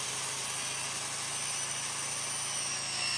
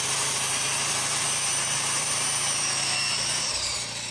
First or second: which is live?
first